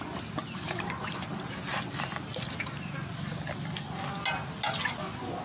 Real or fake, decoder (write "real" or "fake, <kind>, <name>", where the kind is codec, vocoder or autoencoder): real